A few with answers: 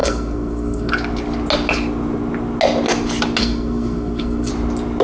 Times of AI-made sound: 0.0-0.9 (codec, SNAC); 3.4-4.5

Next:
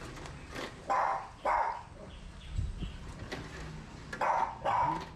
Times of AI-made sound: none

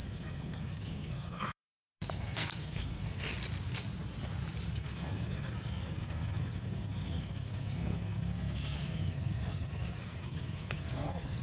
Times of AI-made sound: 0.0-3.3 (codec, SNAC); 4.7-11.4

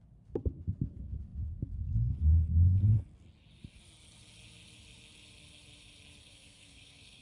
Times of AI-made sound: 6.2-7.2 (codec, SNAC)

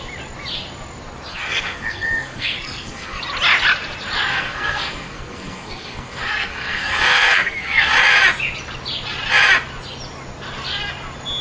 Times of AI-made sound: 1.3-3.2 (codec, SNAC); 4.3-7.9

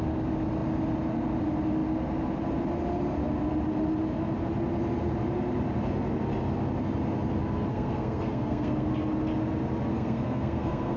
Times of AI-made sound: 7.7-8.9 (codec, SNAC); 9.9-11.0

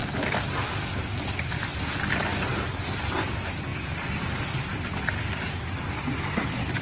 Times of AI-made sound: none

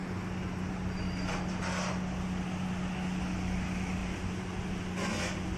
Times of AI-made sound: none